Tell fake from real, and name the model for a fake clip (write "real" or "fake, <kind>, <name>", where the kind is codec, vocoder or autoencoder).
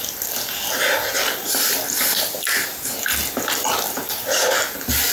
real